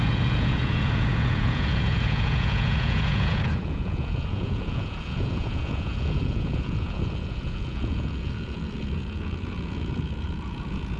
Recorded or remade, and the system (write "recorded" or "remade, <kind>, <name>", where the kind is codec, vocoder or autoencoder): remade, vocoder, Vocos